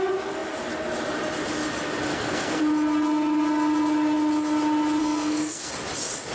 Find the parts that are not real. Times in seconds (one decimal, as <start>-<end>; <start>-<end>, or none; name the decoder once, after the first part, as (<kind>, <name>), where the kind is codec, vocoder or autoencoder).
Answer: 2.1-2.6 (codec, SNAC); 5.0-5.7